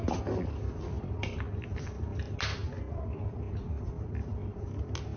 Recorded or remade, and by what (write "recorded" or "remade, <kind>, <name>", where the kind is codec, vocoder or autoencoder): recorded